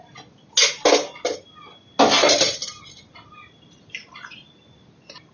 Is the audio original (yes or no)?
yes